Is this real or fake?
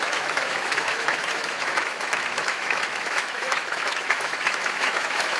fake